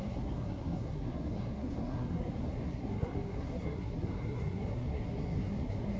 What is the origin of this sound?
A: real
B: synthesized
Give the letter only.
B